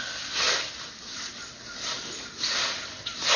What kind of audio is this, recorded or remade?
recorded